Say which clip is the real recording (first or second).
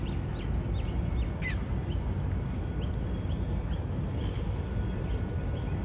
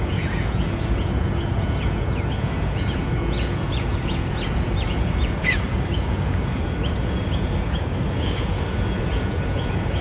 first